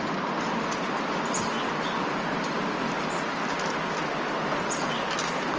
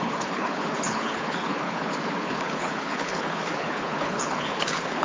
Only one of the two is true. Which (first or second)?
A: first